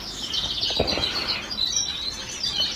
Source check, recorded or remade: recorded